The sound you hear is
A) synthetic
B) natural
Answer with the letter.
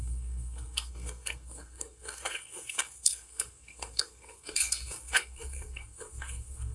A